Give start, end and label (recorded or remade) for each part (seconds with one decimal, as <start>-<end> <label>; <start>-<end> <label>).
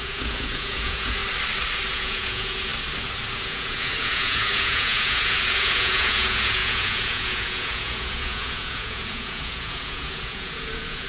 0.0-1.2 remade; 1.2-1.9 recorded; 1.9-2.7 remade; 2.7-3.3 recorded; 3.3-11.1 remade